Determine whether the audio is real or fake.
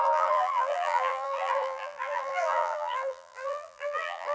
fake